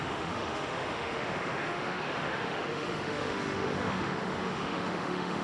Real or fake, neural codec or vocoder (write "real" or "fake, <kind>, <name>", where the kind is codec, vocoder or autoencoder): fake, autoencoder, DAC-VAE